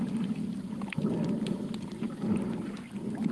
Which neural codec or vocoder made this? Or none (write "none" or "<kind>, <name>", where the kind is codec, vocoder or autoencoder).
none